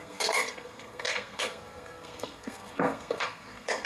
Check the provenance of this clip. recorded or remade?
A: remade